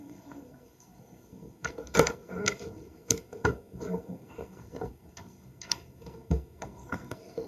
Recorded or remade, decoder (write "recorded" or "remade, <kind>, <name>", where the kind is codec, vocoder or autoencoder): remade, codec, SNAC